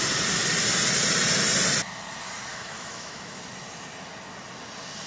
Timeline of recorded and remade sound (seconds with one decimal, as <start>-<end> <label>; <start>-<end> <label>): 0.0-2.5 recorded; 2.5-3.4 remade; 3.4-5.1 recorded